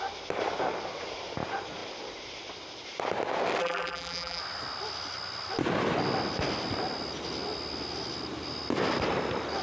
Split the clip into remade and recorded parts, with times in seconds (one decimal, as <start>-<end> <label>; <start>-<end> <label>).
0.0-3.6 recorded; 3.6-4.4 remade; 4.4-9.6 recorded